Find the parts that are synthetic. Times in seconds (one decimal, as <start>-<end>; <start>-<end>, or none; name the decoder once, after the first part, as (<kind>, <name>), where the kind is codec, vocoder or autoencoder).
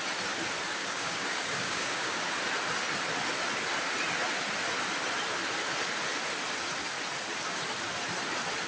0.8-2.3 (codec, DAC)